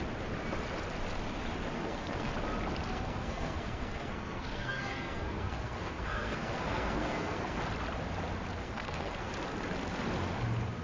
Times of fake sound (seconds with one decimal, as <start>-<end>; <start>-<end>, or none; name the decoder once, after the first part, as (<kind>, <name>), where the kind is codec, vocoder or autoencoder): 1.7-2.3 (codec, SNAC); 2.9-7.6; 8.6-9.3